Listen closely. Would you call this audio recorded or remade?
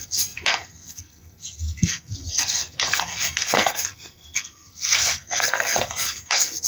remade